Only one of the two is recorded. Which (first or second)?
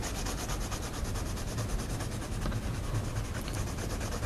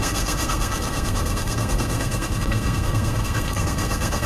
first